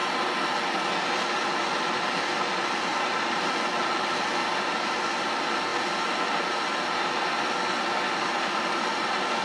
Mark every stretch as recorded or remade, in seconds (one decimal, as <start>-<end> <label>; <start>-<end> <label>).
0.0-2.9 recorded; 2.9-3.5 remade; 3.5-4.4 recorded; 4.4-5.0 remade; 5.0-9.4 recorded